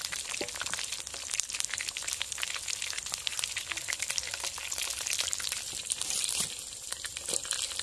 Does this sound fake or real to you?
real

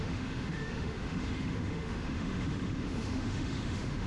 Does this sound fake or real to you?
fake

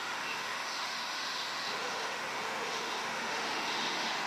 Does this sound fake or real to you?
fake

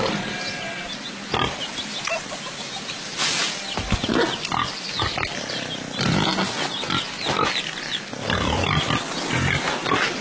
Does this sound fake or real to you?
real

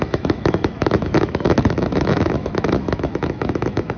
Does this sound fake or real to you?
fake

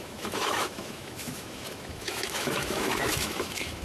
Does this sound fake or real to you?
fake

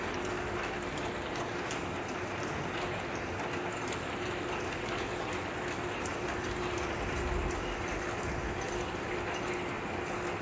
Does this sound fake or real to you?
real